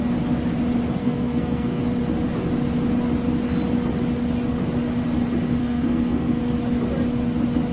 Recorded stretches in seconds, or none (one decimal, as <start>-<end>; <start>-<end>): 0.0-1.0; 1.8-5.6; 6.4-7.7